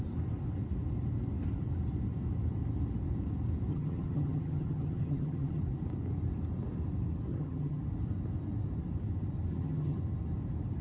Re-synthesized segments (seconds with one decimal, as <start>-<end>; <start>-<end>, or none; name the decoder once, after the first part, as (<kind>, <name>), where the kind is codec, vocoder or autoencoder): 3.7-5.6 (vocoder, HiFi-GAN); 7.3-7.8; 9.5-10.0